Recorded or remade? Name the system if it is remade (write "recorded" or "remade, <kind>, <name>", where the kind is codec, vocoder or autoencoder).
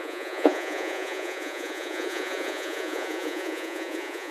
remade, vocoder, Vocos